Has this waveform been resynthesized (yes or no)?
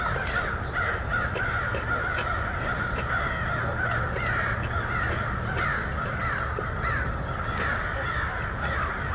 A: no